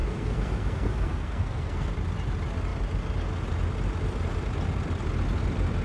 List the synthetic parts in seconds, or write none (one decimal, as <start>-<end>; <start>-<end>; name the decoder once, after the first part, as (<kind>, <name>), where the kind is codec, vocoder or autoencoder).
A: 0.0-1.9 (codec, SNAC)